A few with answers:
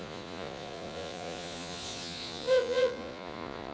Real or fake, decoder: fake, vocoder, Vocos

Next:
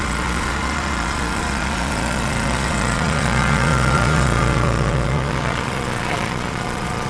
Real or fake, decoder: fake, vocoder, Vocos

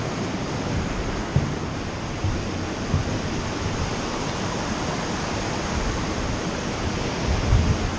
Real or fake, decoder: real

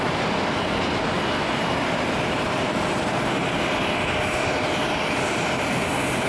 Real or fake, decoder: real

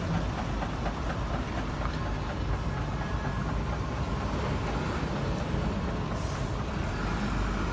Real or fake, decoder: real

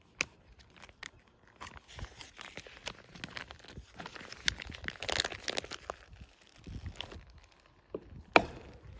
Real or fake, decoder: real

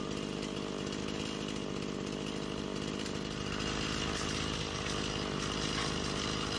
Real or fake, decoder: real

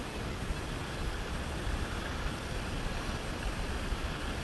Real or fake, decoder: real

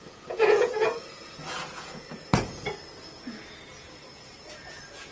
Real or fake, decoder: fake, vocoder, Vocos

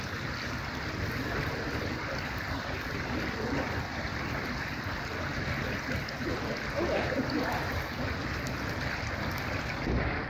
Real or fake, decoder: real